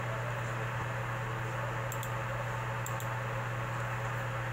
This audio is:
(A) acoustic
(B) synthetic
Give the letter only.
A